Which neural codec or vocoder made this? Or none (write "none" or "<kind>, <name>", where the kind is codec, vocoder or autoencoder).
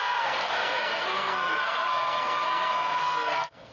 codec, SNAC